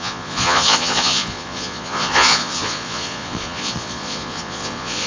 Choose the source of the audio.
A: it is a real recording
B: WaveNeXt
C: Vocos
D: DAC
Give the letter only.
C